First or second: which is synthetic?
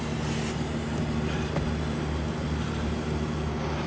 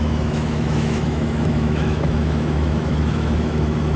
second